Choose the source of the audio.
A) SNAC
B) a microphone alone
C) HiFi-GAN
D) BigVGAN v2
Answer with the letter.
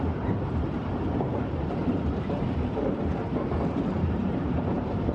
D